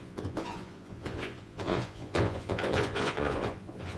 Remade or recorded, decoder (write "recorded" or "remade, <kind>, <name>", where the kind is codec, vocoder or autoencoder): remade, vocoder, Vocos